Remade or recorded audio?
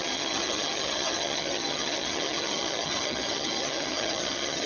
remade